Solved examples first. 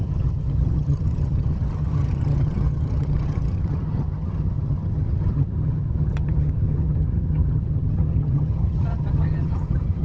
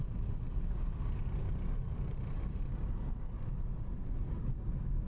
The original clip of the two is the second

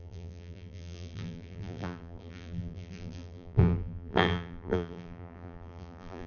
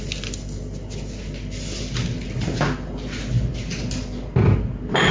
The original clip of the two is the second